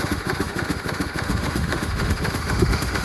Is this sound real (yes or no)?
no